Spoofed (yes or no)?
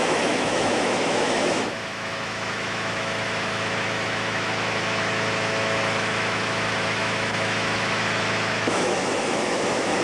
yes